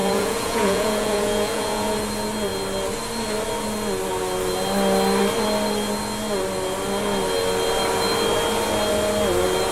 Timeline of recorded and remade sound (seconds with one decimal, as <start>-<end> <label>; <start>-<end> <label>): 0.0-1.9 remade; 1.9-9.7 recorded